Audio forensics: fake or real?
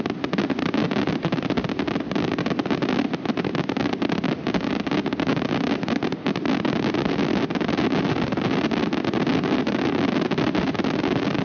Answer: real